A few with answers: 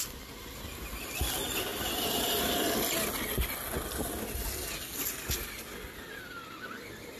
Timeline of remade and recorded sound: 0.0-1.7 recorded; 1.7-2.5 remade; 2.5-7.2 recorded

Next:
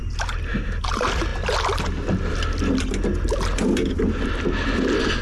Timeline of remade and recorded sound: 0.0-5.2 recorded

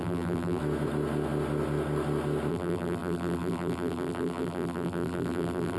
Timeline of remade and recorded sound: 0.0-0.6 remade; 0.6-2.5 recorded; 2.5-5.8 remade

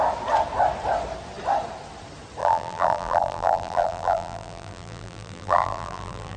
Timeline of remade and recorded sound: 0.0-2.4 recorded; 2.4-6.4 remade

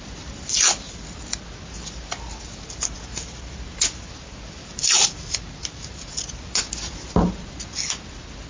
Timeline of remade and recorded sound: 0.0-4.6 recorded; 4.6-6.0 remade; 6.0-8.5 recorded

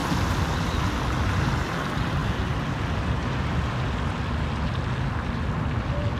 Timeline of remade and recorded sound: 0.0-6.2 recorded

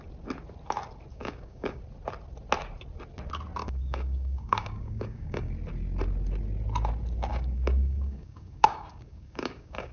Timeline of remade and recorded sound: 0.0-1.1 recorded; 1.1-1.8 remade; 1.8-3.6 recorded; 3.6-5.5 remade; 5.5-7.3 recorded; 7.3-9.9 remade